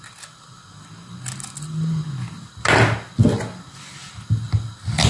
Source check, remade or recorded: recorded